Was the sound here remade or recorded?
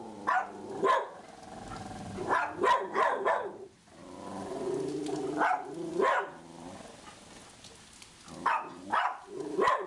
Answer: recorded